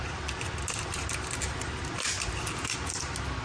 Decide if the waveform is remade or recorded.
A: recorded